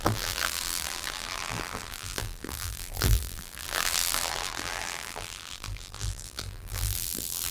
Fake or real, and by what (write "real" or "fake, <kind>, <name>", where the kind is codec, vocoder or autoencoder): fake, vocoder, BigVGAN v2